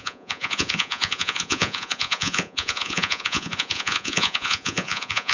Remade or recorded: remade